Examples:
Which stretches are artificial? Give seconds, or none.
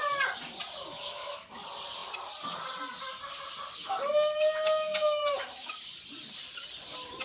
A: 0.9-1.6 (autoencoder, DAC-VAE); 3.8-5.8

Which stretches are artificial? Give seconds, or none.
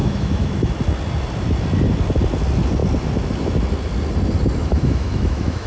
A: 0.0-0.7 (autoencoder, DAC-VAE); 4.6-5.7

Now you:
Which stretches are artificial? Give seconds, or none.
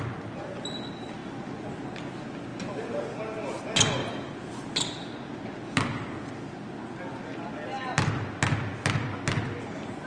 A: none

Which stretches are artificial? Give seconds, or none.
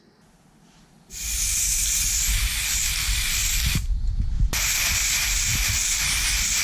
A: none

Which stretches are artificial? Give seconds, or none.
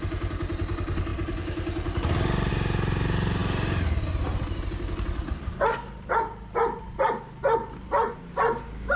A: none